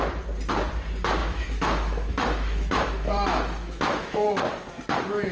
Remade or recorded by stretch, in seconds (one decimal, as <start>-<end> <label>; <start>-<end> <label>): 0.0-1.2 recorded; 1.2-4.4 remade; 4.4-5.3 recorded